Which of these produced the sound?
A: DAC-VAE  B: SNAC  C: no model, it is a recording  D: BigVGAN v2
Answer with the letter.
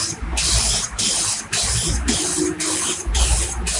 C